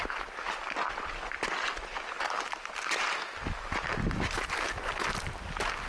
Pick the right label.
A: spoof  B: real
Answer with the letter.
B